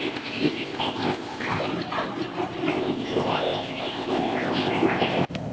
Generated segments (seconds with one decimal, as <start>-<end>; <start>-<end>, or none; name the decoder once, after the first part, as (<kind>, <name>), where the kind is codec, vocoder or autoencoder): 0.0-1.7 (codec, ZipCodec); 2.7-5.5

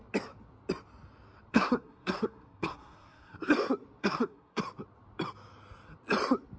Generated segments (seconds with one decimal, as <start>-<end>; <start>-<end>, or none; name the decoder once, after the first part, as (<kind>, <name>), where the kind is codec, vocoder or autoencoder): 1.5-3.5 (codec, SNAC); 4.0-4.6

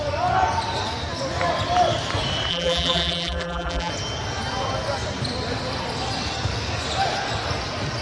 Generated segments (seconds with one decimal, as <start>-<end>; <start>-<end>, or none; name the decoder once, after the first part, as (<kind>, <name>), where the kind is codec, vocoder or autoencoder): 2.5-3.9 (vocoder, BigVGAN v2)

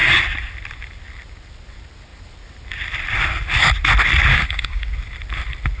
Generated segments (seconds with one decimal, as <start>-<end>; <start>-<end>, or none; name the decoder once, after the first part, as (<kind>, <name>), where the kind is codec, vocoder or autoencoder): 4.3-4.9 (codec, DAC)

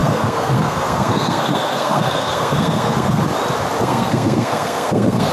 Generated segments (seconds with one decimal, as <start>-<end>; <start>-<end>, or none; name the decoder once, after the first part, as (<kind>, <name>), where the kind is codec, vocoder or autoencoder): 0.0-3.2 (codec, SNAC); 3.8-5.3